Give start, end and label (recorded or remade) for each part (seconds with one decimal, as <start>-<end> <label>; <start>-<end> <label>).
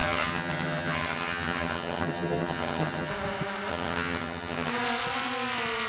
0.0-3.1 remade; 3.1-3.7 recorded; 3.7-4.7 remade; 4.7-5.9 recorded